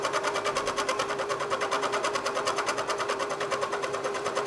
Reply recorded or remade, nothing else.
recorded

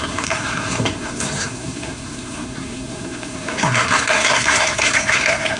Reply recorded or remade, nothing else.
remade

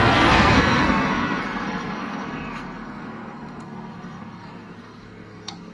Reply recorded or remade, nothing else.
remade